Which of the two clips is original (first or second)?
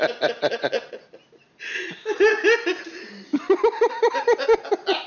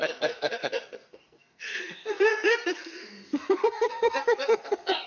first